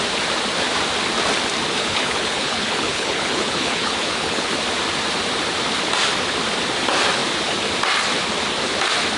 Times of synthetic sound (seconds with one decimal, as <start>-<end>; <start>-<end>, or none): 1.8-4.5